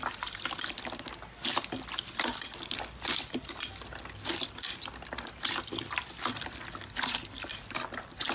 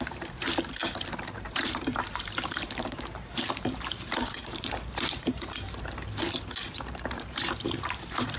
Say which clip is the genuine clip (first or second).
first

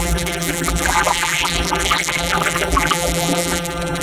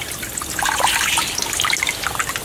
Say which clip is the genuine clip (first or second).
second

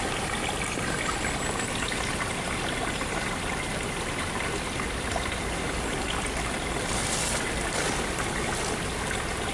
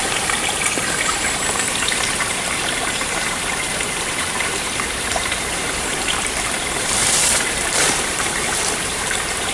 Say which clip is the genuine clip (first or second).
first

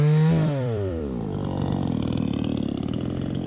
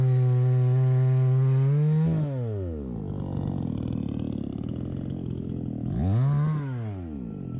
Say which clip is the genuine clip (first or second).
second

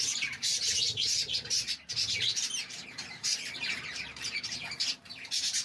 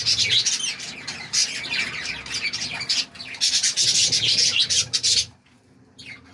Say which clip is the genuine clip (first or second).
second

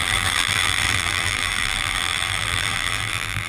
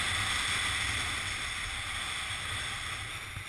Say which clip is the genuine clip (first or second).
second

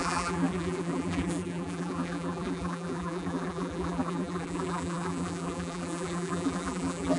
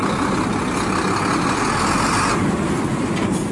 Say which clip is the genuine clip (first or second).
second